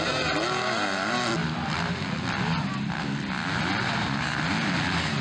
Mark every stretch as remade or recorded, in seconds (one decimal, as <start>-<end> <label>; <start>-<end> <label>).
0.0-5.2 recorded